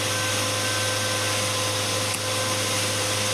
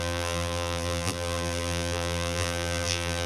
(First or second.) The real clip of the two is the first